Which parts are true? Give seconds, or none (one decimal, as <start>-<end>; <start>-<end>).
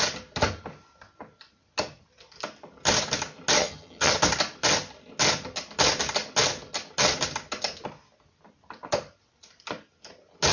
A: 0.0-3.6; 4.1-10.5